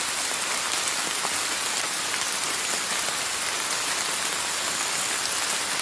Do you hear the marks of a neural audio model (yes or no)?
no